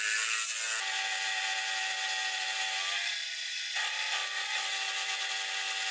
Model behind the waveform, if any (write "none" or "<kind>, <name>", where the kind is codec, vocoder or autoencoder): none